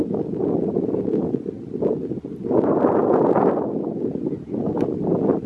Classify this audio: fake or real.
real